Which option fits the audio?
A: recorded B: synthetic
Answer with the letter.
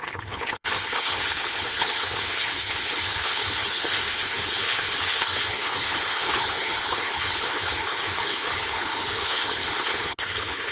B